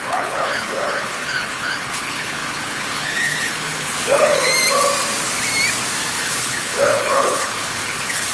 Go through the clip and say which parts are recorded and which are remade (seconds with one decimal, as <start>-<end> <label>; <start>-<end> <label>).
0.0-4.5 remade; 4.5-6.1 recorded; 6.1-8.3 remade